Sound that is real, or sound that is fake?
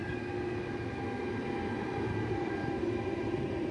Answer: real